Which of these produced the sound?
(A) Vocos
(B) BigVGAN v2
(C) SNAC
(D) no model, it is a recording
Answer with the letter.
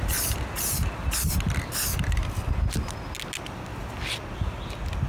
D